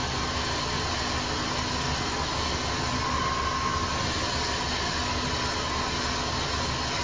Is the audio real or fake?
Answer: real